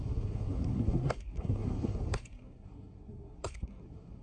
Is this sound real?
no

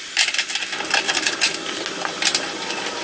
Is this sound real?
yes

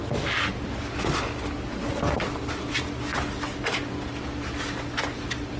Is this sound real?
yes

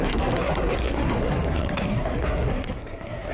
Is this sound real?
no